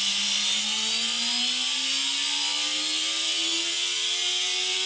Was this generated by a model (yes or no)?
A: no